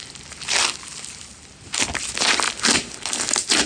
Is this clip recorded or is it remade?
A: recorded